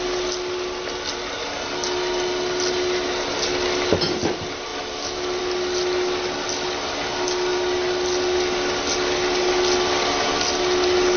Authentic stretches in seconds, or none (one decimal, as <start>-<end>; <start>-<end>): 0.0-11.2